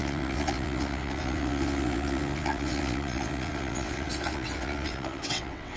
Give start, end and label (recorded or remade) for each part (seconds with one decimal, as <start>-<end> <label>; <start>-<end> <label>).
0.0-5.8 remade